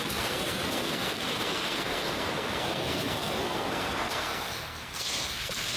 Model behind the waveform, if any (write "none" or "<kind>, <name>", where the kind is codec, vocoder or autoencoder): codec, SNAC